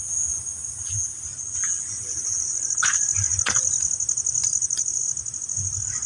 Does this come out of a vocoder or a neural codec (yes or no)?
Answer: no